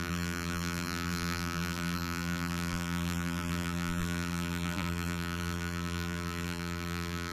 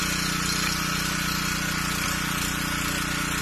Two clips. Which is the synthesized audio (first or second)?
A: first